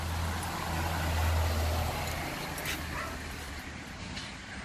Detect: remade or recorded recorded